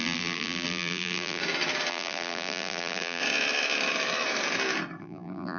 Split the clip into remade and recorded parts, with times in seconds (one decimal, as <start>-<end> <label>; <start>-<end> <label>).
0.0-1.4 remade; 1.4-1.9 recorded; 1.9-3.2 remade; 3.2-5.0 recorded; 5.0-5.6 remade